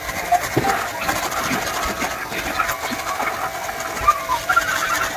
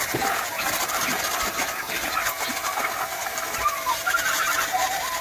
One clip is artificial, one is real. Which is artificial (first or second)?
second